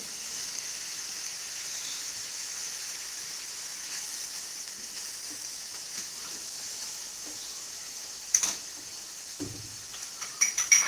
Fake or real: fake